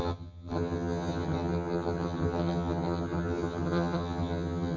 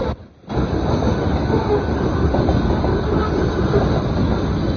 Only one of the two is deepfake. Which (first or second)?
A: first